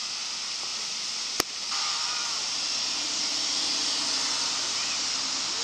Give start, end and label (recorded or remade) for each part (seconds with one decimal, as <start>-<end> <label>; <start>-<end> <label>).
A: 0.0-0.7 recorded; 0.7-2.8 remade; 2.8-5.6 recorded